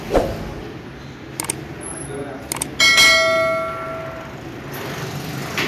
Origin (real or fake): real